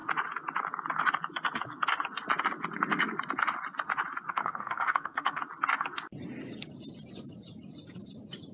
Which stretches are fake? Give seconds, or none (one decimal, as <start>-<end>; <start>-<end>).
4.3-5.4